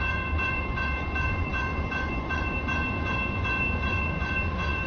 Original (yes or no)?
no